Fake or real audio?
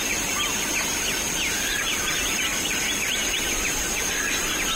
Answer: real